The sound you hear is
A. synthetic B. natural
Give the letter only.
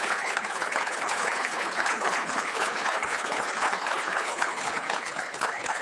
A